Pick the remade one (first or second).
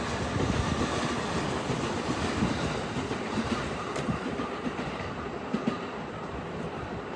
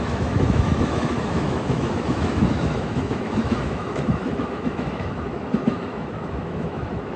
second